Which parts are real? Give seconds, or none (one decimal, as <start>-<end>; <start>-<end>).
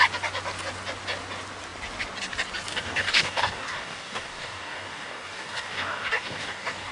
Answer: 0.0-2.7